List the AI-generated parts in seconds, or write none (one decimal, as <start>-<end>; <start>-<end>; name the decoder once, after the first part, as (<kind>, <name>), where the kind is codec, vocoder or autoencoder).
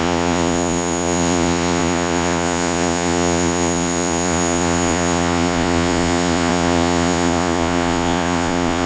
0.0-8.9 (vocoder, Vocos)